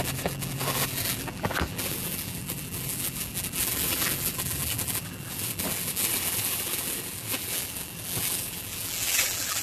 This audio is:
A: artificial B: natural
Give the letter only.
A